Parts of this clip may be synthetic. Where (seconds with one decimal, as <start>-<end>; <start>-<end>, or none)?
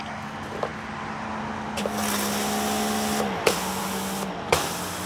none